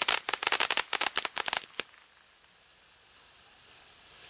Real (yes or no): yes